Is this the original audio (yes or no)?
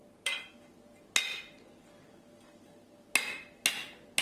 yes